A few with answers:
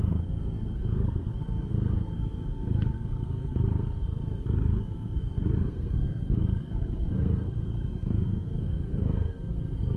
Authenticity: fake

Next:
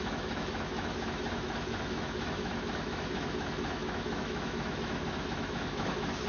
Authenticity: fake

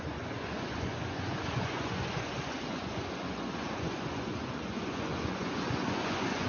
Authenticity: fake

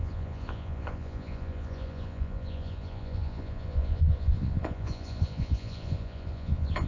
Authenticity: fake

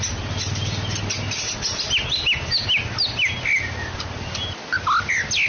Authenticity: real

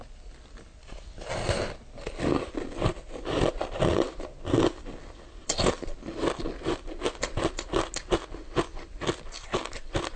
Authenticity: real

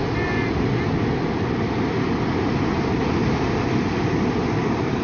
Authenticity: real